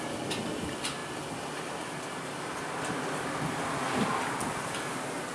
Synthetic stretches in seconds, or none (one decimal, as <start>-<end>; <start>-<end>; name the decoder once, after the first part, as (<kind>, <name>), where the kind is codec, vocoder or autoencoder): none

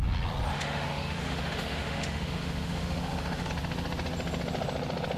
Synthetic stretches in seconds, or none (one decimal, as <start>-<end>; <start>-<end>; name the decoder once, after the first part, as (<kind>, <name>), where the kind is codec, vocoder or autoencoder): 0.5-3.5 (autoencoder, DAC-VAE)

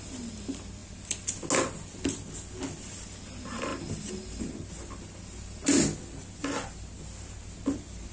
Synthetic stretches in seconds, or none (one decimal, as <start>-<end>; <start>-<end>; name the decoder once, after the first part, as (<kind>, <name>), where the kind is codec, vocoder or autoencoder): none

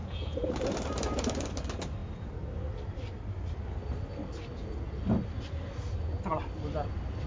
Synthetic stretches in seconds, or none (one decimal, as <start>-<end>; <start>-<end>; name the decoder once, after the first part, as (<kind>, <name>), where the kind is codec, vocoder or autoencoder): 0.0-0.5 (vocoder, Vocos)